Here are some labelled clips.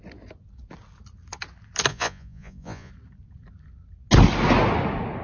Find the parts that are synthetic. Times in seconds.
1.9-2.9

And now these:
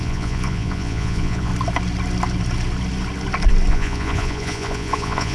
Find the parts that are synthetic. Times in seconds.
0.0-1.5; 3.7-5.3

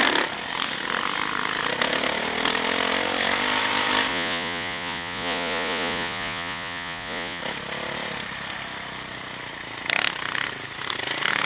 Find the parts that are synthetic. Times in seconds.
4.1-7.4